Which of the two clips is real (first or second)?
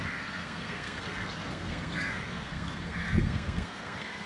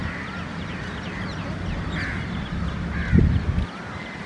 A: second